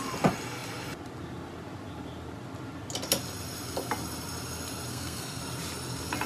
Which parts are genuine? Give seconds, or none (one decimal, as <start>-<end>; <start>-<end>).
0.0-4.9; 5.4-6.3